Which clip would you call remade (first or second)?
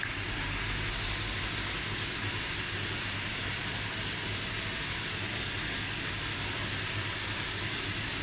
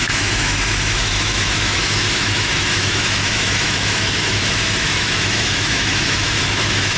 second